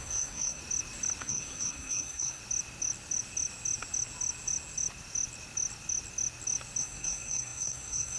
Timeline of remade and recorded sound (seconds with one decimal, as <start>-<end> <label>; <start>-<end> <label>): 0.0-0.6 remade; 0.6-1.2 recorded; 1.2-2.4 remade; 2.4-6.8 recorded; 6.8-8.2 remade